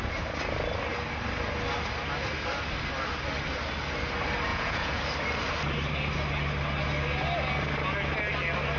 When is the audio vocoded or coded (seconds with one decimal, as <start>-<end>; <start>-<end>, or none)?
4.5-5.0